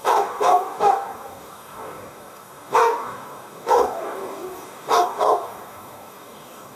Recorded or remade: remade